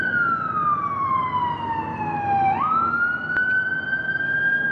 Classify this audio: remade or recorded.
recorded